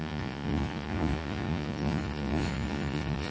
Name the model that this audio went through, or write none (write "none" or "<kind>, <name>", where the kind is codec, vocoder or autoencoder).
vocoder, Vocos